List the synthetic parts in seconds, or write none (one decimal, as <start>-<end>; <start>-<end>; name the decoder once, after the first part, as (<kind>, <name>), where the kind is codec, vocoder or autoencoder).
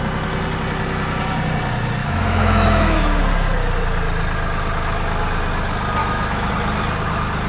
2.0-3.2 (autoencoder, DAC-VAE); 6.0-6.5